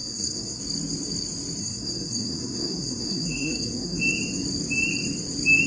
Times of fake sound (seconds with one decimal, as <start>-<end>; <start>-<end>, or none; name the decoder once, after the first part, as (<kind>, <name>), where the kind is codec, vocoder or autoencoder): 0.0-0.6 (codec, SNAC); 1.6-4.0